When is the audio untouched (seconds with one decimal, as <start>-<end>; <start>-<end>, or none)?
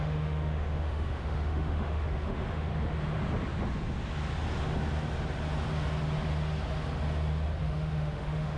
2.7-7.6